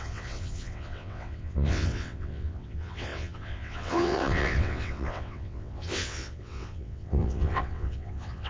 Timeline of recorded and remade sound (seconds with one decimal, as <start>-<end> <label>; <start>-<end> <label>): 0.0-8.5 remade